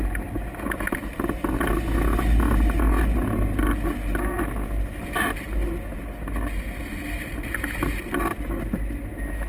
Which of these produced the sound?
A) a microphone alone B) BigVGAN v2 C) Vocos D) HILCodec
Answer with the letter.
A